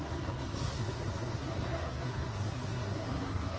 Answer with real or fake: fake